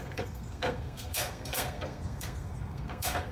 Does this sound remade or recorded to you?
remade